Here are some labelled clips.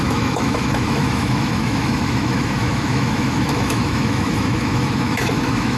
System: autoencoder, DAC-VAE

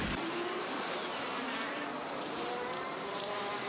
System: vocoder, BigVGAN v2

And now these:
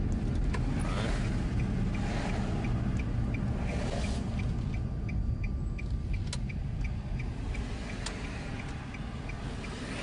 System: none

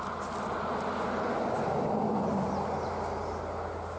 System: none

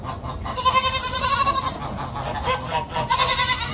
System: none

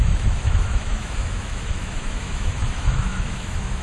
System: autoencoder, DAC-VAE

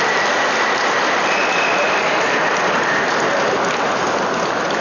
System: none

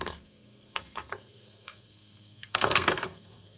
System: codec, SNAC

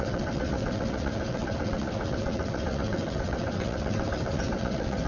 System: vocoder, WaveNeXt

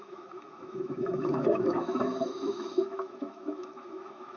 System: autoencoder, DAC-VAE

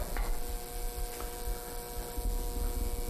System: none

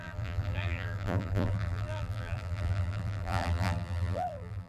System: vocoder, BigVGAN v2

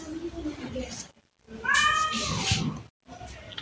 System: none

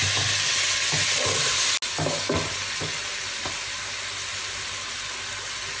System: none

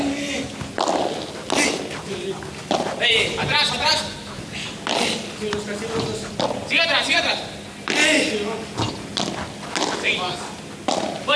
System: none